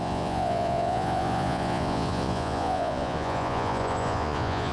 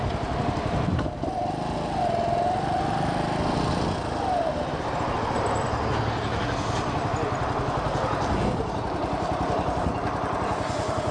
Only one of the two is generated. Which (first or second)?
first